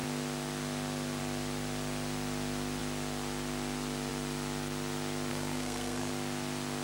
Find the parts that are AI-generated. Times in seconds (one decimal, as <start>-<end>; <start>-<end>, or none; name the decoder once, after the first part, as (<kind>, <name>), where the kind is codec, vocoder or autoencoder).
5.3-6.1 (codec, SNAC)